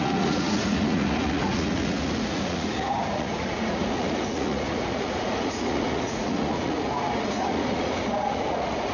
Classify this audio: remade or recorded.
remade